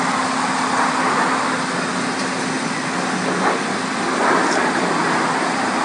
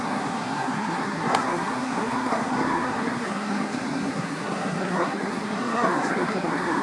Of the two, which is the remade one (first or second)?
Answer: second